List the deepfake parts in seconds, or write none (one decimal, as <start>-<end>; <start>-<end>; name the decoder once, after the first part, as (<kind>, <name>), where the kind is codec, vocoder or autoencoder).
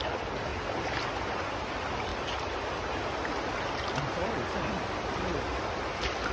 none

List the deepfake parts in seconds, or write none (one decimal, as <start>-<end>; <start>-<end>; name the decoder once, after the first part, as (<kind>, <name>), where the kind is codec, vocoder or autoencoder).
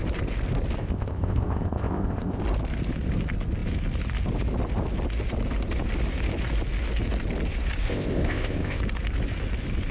0.8-2.4 (codec, ZipCodec); 7.8-8.8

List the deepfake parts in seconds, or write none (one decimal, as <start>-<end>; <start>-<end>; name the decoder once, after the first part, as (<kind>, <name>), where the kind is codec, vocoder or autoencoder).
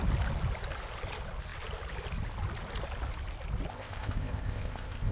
3.7-5.1 (codec, ZipCodec)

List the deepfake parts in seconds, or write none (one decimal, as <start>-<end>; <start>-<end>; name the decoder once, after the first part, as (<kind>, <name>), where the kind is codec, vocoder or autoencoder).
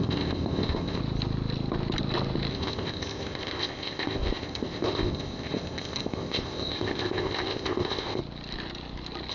0.0-1.0 (codec, ZipCodec); 2.5-8.2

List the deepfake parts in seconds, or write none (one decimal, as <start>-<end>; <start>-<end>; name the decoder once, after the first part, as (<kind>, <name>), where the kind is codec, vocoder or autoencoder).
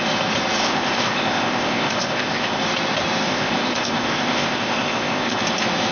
0.6-2.6 (codec, ZipCodec); 3.3-5.4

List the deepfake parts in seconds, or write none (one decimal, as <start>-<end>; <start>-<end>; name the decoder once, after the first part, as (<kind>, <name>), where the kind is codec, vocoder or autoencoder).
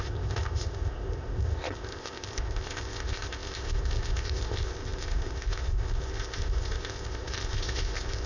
0.0-8.3 (codec, ZipCodec)